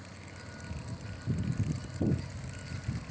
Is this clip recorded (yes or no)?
yes